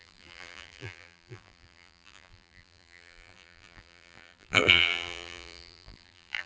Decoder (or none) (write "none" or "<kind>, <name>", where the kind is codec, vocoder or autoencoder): vocoder, BigVGAN v2